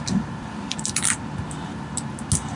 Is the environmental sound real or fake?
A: real